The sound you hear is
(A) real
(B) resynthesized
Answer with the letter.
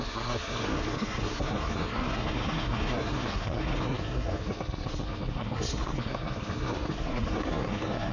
B